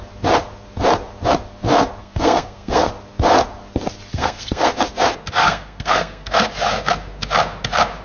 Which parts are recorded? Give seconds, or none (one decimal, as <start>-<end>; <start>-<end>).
0.0-2.0; 2.9-4.1; 4.7-5.4; 6.5-8.0